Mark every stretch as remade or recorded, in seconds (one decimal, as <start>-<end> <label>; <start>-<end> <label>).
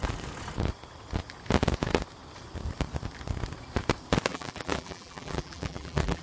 0.0-4.3 recorded; 4.3-6.2 remade